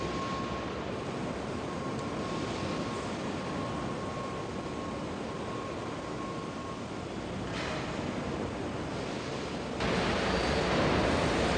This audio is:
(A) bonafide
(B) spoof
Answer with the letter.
A